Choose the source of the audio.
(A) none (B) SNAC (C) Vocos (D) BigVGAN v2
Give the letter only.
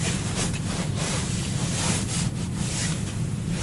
A